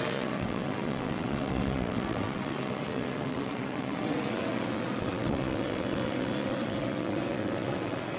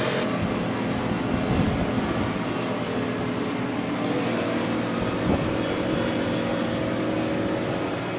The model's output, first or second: first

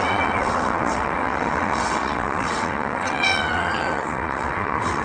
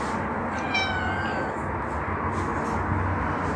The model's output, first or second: first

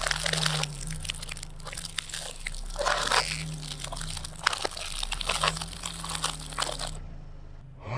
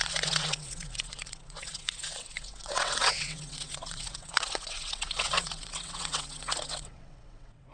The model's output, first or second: second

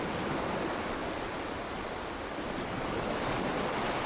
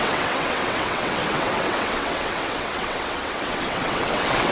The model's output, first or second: second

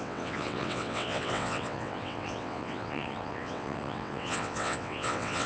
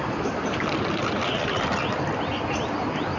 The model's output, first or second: first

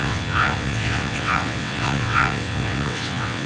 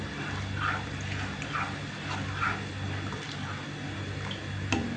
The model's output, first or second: first